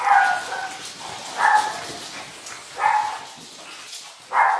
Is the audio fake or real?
real